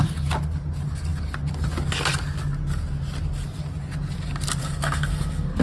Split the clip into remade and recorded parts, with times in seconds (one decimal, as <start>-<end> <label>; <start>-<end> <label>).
0.0-4.6 recorded; 4.6-5.6 remade